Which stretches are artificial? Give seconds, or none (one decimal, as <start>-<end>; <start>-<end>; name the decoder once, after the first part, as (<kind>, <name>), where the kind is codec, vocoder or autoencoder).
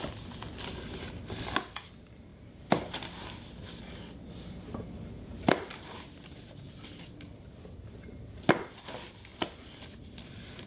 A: none